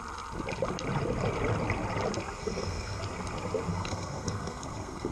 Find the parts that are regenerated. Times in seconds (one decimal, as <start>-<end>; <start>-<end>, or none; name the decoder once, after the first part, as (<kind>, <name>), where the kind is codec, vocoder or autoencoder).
2.4-3.0 (codec, SNAC); 3.7-5.1